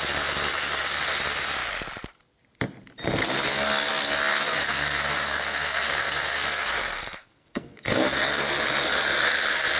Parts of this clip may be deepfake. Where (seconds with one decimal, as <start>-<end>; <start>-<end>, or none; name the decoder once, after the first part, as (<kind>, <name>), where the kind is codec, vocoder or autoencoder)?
4.3-8.5 (codec, SNAC)